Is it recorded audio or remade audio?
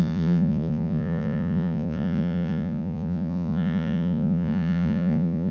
remade